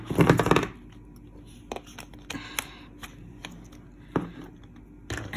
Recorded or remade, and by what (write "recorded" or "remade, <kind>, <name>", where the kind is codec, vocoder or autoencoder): recorded